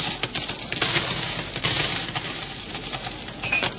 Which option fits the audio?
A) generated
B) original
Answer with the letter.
B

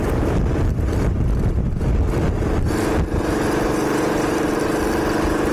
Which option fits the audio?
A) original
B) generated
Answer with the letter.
A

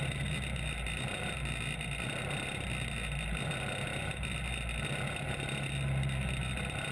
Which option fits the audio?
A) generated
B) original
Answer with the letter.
B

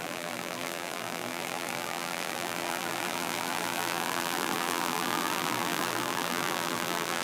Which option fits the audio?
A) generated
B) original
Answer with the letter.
A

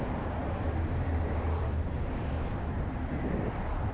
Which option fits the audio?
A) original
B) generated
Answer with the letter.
B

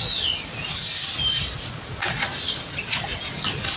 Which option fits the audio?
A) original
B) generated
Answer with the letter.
A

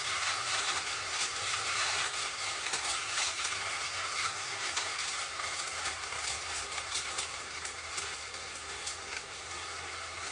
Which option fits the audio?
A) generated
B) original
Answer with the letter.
A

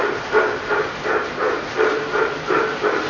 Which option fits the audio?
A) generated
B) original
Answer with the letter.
A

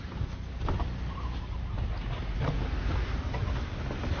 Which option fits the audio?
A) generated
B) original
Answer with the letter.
B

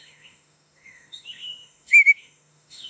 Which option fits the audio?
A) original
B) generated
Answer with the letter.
B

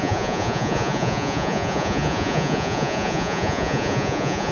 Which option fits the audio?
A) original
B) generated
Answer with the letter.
B